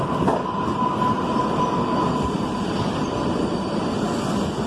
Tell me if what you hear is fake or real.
real